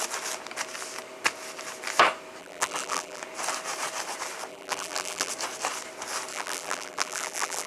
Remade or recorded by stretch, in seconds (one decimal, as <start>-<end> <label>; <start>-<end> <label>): 0.0-2.4 recorded; 2.4-3.2 remade; 3.2-4.5 recorded; 4.5-5.3 remade; 5.3-6.3 recorded; 6.3-7.7 remade